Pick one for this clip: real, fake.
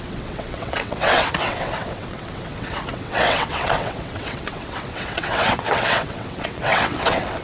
fake